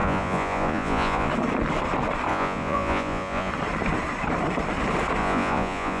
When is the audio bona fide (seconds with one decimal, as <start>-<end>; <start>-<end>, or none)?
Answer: 1.3-2.3; 3.5-5.2